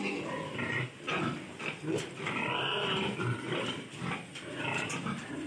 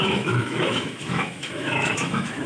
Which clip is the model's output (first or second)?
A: second